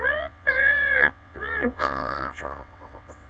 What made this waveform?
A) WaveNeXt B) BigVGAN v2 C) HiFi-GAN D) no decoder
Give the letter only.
A